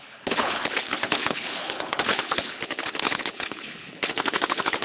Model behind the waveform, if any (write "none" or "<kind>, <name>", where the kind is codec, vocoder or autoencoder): codec, HILCodec